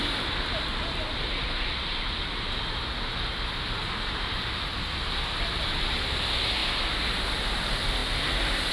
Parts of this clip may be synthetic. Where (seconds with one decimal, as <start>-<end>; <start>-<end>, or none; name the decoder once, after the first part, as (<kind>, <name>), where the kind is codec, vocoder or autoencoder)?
0.0-2.8 (vocoder, BigVGAN v2); 3.6-6.6; 7.5-8.7